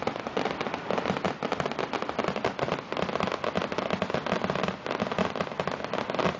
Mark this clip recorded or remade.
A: recorded